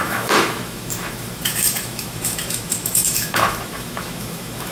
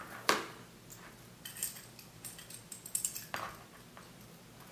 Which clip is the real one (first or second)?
second